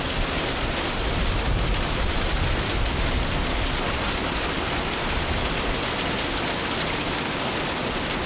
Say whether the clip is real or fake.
real